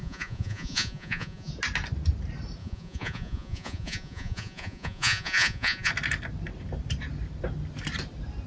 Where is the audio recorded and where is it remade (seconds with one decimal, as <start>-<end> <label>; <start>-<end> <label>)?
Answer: 0.0-1.5 remade; 1.5-2.6 recorded; 2.6-5.9 remade; 5.9-8.5 recorded